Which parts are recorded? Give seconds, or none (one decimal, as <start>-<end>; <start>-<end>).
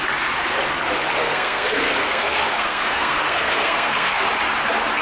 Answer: 0.0-1.2; 4.2-5.0